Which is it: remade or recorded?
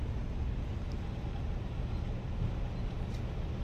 recorded